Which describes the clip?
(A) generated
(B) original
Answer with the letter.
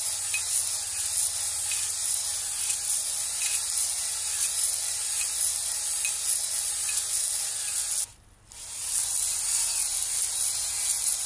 B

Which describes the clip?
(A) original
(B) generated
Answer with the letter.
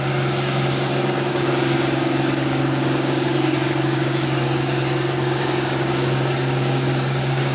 B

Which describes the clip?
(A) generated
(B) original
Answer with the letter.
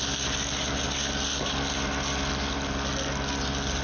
B